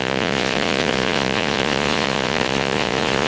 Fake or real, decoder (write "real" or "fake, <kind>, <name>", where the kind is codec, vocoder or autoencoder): fake, vocoder, Vocos